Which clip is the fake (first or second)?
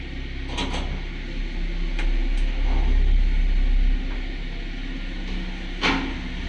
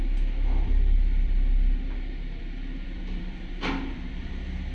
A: second